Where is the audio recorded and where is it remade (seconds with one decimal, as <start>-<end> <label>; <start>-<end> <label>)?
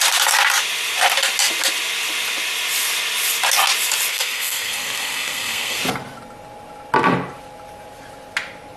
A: 0.0-4.1 recorded; 4.1-5.8 remade; 5.8-8.8 recorded